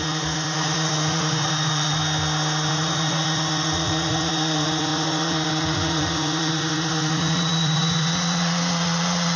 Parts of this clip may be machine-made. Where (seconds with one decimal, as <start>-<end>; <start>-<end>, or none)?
0.0-2.0; 2.7-9.4